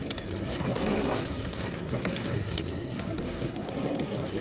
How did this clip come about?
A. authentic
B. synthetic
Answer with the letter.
B